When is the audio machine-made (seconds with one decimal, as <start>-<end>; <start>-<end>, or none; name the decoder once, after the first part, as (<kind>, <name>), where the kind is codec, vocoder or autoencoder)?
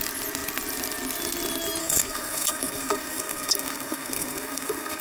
1.8-5.0 (codec, SNAC)